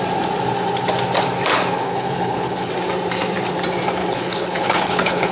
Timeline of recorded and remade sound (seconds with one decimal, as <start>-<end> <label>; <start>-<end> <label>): 0.0-1.5 recorded; 1.5-2.7 remade; 2.7-4.0 recorded; 4.0-5.3 remade